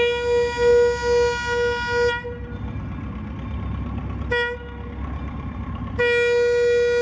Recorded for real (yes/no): yes